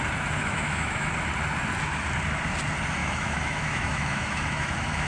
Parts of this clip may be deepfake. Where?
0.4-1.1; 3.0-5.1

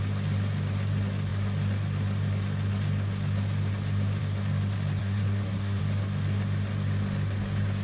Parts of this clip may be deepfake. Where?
5.0-5.8

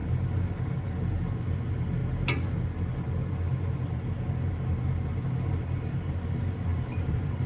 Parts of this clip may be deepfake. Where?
6.7-7.5

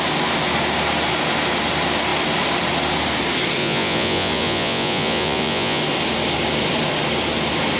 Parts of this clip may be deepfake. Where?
3.6-5.8

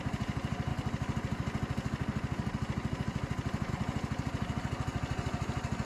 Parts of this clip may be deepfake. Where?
none

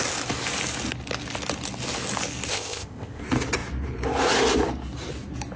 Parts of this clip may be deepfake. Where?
2.5-3.2

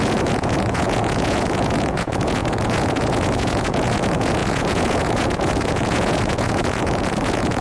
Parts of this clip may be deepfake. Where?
0.0-7.6